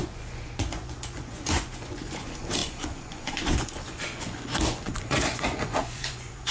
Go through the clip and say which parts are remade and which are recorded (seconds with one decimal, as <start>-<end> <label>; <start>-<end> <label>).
0.0-6.5 remade